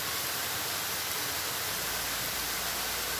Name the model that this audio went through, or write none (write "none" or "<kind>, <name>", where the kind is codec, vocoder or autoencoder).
none